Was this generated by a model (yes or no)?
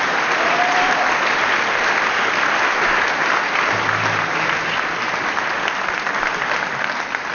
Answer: no